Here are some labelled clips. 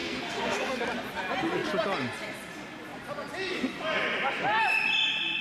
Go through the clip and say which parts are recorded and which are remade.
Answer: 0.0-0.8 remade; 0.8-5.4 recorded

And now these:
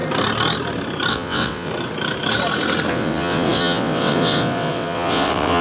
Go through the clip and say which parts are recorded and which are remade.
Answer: 0.0-1.1 recorded; 1.1-1.7 remade; 1.7-2.9 recorded; 2.9-5.6 remade

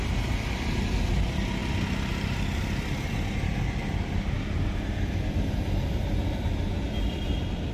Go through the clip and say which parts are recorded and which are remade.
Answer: 0.0-7.7 recorded

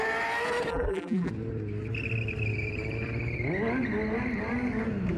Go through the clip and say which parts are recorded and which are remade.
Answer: 0.0-0.7 recorded; 0.7-1.3 remade; 1.3-5.2 recorded